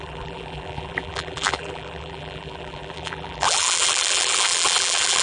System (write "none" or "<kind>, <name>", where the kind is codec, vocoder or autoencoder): vocoder, BigVGAN v2